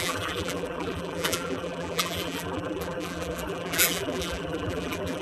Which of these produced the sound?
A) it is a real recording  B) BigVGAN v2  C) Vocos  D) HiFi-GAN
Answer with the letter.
B